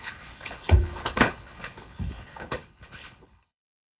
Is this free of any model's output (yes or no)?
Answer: no